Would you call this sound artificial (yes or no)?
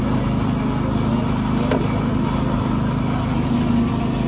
no